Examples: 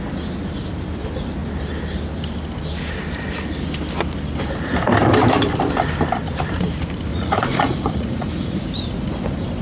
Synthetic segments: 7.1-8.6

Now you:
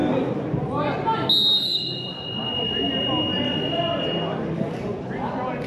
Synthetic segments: none